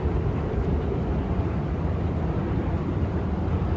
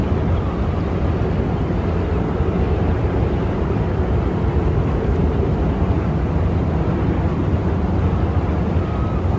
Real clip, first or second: second